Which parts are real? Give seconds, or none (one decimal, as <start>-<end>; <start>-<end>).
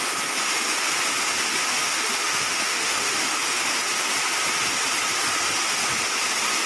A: 0.0-1.7; 3.4-6.7